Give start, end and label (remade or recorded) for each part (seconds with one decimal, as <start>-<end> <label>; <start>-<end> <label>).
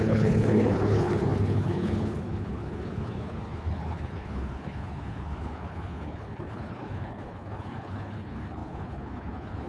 0.0-9.7 remade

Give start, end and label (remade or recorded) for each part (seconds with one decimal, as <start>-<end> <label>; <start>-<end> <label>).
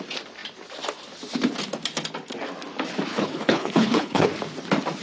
0.0-3.1 recorded; 3.1-4.3 remade; 4.3-5.0 recorded